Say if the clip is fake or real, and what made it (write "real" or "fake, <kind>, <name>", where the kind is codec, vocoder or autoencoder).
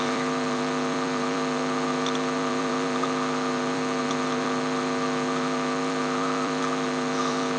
fake, vocoder, BigVGAN v2